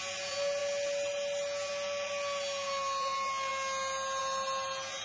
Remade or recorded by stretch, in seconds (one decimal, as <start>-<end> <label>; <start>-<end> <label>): 0.0-5.0 recorded